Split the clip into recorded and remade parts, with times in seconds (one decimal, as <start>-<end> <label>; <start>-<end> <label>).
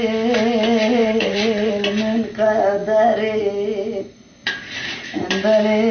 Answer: 0.0-1.0 recorded; 1.0-1.7 remade; 1.7-4.4 recorded; 4.4-5.3 remade; 5.3-5.9 recorded